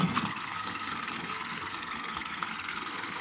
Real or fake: fake